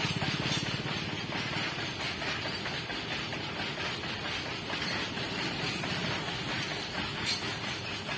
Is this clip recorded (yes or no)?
yes